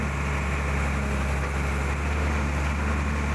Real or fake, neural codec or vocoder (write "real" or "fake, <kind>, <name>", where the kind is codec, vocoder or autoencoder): real